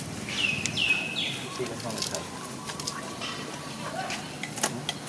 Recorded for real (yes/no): yes